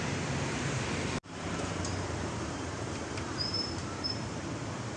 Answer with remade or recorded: remade